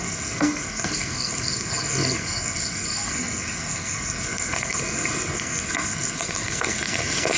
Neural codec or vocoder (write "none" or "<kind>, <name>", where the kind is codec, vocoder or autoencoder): codec, SNAC